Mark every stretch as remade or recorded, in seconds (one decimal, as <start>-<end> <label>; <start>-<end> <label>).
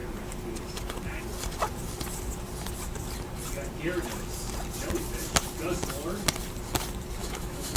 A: 0.0-7.2 recorded; 7.2-7.8 remade